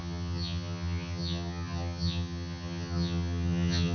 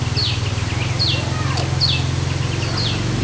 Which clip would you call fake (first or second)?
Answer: first